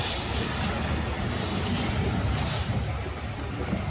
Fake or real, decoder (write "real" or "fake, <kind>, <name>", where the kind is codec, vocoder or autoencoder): real